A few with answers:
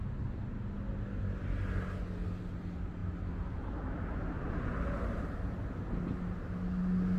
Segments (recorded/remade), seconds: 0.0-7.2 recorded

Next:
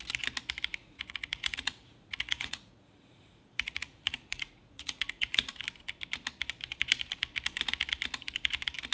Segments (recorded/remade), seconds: 0.0-0.8 recorded; 0.8-5.5 remade; 5.5-8.9 recorded